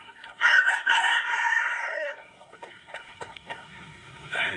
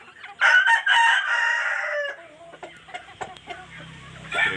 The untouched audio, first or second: second